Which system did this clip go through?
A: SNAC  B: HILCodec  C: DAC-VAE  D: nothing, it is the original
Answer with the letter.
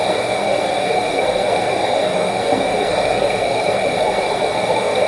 A